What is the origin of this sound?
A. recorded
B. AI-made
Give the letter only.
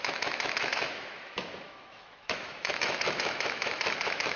B